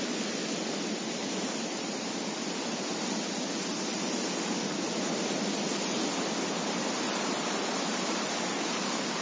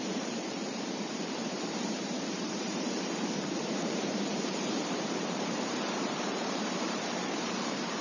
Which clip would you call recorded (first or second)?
first